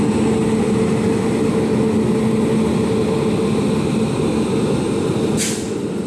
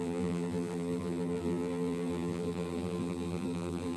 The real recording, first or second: first